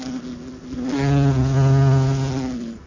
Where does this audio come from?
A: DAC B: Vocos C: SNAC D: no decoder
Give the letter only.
D